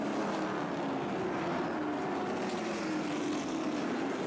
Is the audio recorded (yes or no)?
yes